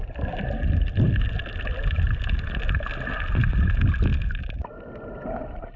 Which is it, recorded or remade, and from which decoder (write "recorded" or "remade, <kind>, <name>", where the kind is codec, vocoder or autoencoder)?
recorded